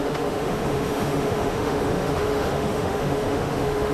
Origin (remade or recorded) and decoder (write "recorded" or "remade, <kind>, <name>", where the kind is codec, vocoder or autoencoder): remade, autoencoder, DAC-VAE